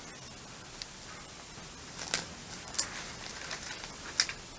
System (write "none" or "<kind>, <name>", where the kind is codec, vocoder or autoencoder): none